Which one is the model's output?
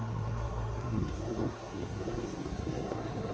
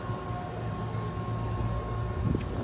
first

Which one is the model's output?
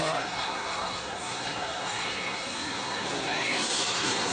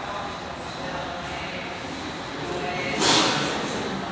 first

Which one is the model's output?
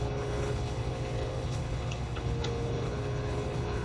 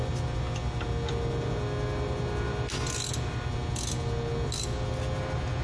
first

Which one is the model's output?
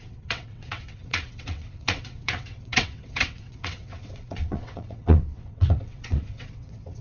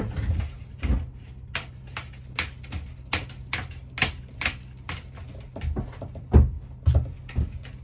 first